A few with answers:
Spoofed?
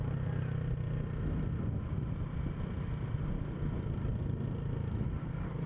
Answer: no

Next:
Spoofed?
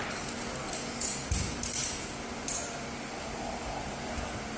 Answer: no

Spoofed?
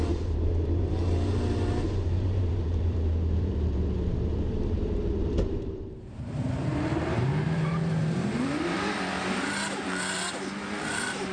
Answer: yes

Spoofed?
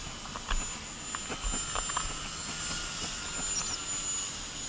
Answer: no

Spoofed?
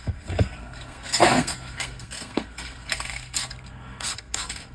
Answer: yes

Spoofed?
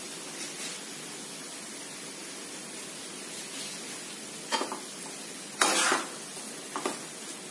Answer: no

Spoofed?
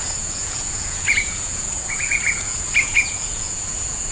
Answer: yes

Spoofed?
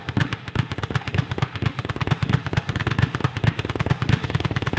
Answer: yes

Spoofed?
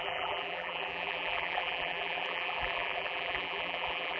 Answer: yes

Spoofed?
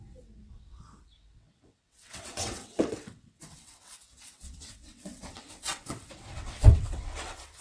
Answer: yes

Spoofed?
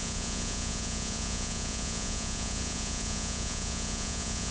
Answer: yes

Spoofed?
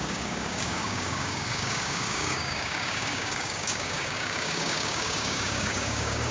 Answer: yes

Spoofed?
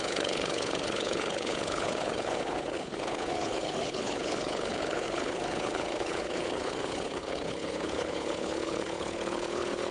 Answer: yes